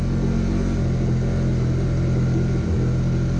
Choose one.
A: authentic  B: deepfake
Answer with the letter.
A